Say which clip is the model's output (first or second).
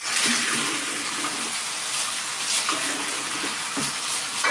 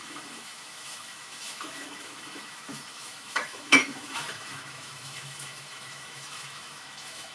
second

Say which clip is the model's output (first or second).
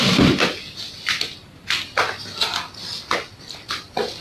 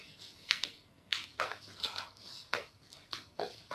second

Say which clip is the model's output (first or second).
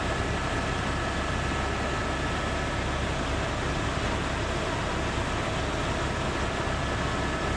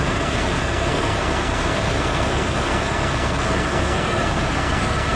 second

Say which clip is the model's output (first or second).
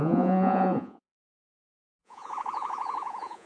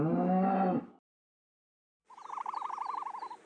first